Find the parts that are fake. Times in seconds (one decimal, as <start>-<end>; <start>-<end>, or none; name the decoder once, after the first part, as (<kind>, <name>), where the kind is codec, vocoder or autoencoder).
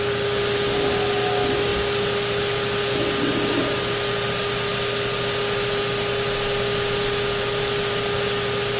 none